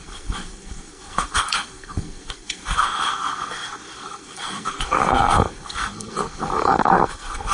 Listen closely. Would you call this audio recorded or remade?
remade